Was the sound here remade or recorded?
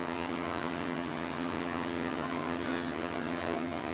remade